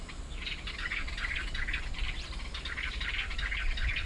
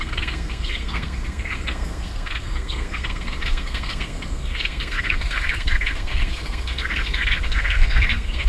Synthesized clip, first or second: second